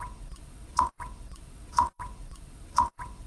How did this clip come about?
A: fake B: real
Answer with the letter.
A